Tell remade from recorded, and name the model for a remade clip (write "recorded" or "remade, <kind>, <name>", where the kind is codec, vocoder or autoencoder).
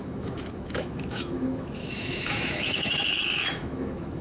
remade, autoencoder, DAC-VAE